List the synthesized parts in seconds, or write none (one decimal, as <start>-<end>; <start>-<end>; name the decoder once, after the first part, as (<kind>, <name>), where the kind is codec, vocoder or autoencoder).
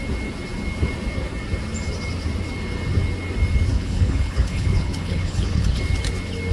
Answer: 3.7-5.8 (codec, HILCodec)